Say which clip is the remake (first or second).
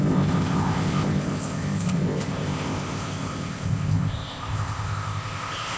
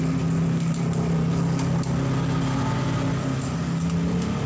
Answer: first